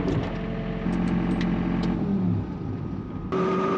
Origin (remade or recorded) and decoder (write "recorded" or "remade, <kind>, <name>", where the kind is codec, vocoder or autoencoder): recorded